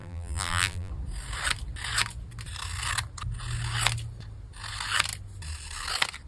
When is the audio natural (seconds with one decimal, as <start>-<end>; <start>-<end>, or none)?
0.9-6.3